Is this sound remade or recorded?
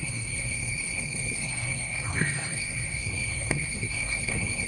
remade